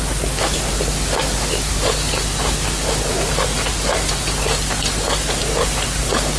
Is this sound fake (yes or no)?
no